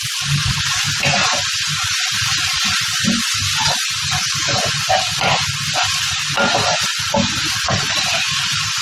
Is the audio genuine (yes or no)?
yes